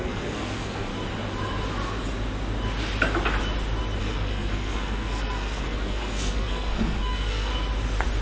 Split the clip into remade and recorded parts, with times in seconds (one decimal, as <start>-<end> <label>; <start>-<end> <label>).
0.0-0.9 remade; 0.9-4.0 recorded; 4.0-7.5 remade; 7.5-8.2 recorded